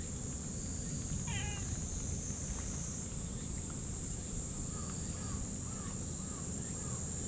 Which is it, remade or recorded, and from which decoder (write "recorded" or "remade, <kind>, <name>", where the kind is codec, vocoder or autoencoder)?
recorded